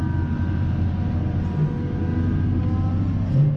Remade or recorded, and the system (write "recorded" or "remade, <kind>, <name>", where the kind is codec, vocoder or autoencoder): recorded